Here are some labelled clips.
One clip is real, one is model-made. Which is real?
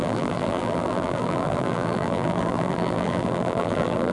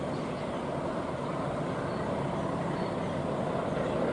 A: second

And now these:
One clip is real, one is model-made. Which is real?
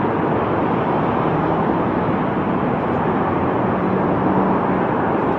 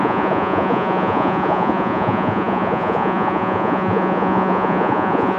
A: first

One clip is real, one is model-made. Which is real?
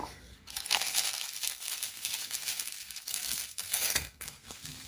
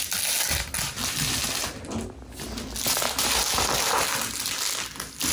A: second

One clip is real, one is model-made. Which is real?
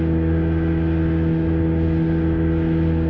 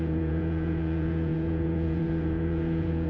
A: first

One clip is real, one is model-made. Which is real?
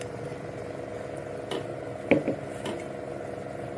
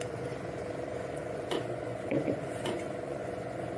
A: first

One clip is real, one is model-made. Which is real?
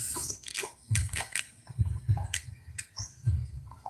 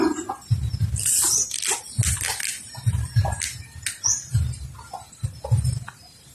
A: second